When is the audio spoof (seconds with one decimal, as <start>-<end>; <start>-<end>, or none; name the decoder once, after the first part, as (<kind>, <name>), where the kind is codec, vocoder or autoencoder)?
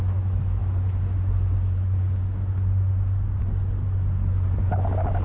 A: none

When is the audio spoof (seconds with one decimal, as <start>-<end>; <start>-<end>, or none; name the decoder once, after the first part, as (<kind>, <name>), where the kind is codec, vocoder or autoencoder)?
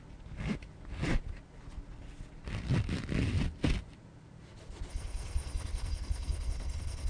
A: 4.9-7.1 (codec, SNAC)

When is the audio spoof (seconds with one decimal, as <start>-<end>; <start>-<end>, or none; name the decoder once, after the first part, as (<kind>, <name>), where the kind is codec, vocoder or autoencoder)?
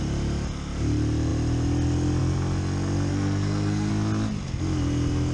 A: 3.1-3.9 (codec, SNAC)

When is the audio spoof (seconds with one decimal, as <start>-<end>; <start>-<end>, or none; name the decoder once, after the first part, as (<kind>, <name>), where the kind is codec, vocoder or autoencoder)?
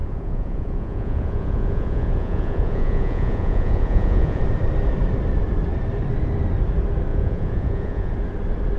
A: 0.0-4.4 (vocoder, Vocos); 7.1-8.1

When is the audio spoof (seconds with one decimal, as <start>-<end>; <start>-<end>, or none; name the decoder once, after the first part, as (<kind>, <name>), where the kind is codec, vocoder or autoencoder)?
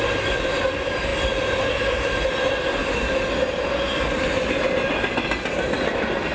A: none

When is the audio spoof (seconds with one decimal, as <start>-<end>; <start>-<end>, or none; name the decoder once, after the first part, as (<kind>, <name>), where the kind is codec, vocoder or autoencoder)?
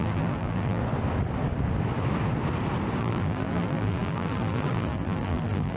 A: 0.0-0.8 (vocoder, BigVGAN v2); 3.0-5.8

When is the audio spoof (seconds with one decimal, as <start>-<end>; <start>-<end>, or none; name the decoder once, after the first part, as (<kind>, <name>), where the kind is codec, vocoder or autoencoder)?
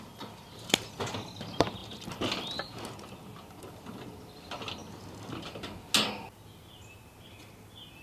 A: none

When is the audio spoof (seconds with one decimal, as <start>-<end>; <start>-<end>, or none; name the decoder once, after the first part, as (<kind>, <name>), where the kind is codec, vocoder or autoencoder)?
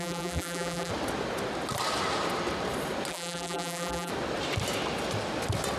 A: 0.0-0.9 (vocoder, BigVGAN v2); 3.1-4.1